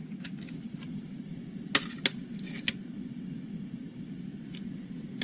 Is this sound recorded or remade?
recorded